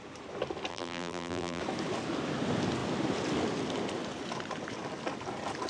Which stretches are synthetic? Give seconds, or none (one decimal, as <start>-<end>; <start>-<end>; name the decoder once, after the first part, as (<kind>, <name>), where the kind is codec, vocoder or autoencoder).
0.7-1.6 (vocoder, BigVGAN v2)